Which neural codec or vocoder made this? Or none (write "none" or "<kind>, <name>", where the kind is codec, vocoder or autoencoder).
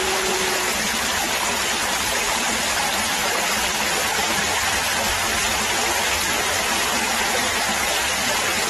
vocoder, BigVGAN v2